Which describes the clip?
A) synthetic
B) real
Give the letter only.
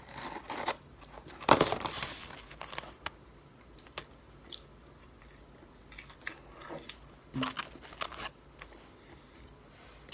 B